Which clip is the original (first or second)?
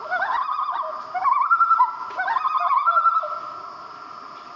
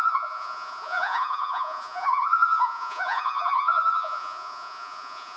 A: first